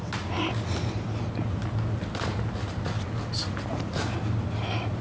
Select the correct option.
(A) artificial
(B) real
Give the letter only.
B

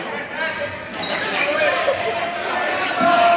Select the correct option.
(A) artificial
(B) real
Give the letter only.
B